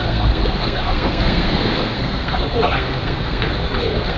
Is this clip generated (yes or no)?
yes